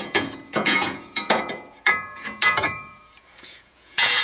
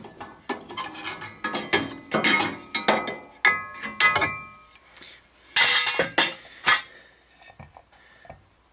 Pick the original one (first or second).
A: second